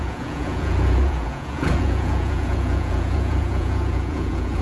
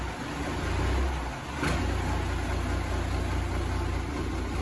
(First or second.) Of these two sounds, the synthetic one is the first